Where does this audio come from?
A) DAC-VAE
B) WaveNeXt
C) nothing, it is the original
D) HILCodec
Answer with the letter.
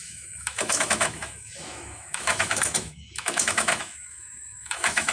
A